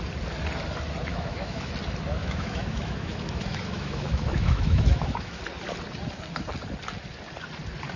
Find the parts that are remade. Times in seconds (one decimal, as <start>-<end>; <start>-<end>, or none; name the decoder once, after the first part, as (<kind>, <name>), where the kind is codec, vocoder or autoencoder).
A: 1.1-1.7 (autoencoder, DAC-VAE); 2.2-5.4